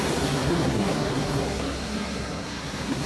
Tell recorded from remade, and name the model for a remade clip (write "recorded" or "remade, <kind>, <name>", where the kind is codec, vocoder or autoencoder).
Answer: remade, codec, SNAC